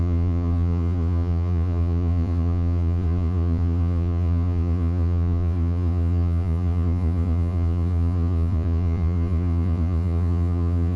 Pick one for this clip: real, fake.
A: fake